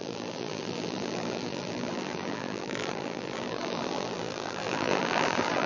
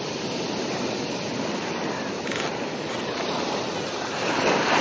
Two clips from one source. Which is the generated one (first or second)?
first